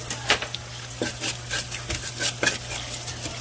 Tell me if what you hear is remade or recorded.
recorded